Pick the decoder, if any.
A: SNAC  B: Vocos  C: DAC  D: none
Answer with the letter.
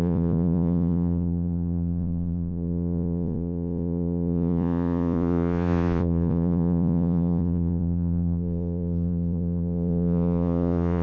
B